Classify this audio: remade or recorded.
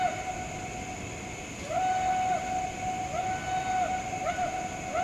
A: recorded